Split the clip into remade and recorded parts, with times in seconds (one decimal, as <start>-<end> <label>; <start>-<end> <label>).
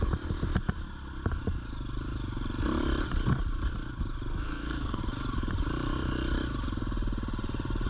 0.0-4.3 recorded; 4.3-5.0 remade; 5.0-7.9 recorded